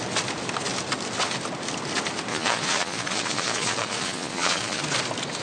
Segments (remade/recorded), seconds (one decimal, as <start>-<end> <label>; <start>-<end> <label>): 0.0-2.3 recorded; 2.3-4.8 remade; 4.8-5.4 recorded